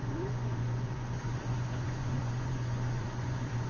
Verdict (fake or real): fake